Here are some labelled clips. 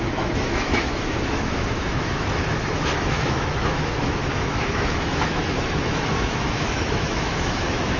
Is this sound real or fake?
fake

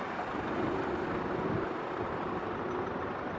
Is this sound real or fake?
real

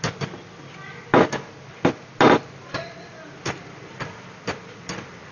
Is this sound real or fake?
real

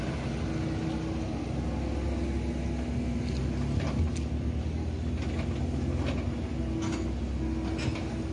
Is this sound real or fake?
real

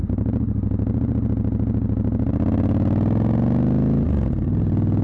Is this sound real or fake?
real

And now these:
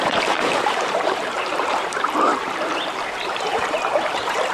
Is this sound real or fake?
fake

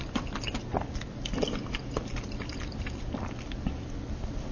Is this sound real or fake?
fake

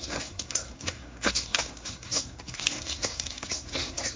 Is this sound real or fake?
fake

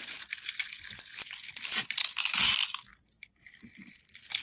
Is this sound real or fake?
real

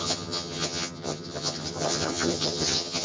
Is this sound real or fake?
fake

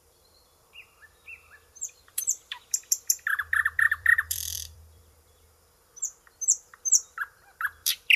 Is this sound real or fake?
fake